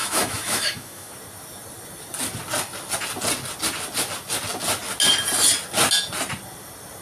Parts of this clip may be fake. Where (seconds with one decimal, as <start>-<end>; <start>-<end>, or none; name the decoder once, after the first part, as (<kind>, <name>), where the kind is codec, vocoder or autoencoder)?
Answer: 0.0-1.1 (autoencoder, DAC-VAE)